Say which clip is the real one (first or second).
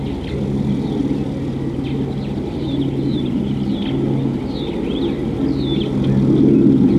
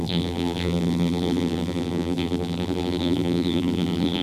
first